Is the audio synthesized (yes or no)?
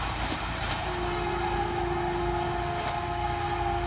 no